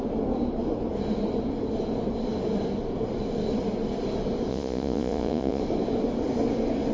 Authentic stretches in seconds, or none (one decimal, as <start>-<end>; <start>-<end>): 0.0-4.5; 5.6-6.9